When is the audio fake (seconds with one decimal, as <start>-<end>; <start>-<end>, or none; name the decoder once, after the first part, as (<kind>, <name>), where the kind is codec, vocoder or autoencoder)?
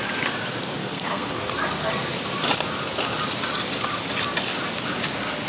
0.8-1.5 (codec, SNAC)